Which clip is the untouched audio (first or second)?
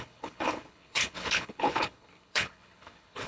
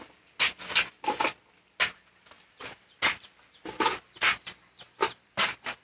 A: second